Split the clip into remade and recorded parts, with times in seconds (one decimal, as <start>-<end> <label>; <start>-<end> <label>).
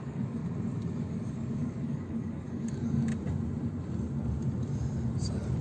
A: 0.0-0.4 remade; 0.4-1.0 recorded; 1.0-3.1 remade; 3.1-5.6 recorded